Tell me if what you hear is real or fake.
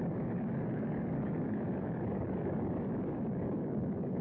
fake